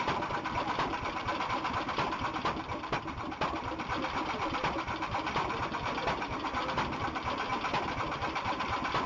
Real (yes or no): no